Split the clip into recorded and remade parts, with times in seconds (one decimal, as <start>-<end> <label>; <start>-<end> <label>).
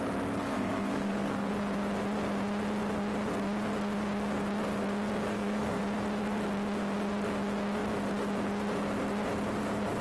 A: 0.0-0.4 recorded; 0.4-1.5 remade; 1.5-5.3 recorded; 5.3-5.8 remade; 5.8-10.0 recorded